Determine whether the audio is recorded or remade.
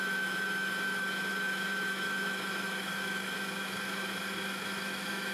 remade